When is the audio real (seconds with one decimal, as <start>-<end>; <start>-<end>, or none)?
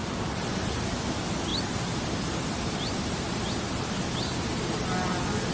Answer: 0.6-1.5; 4.8-5.5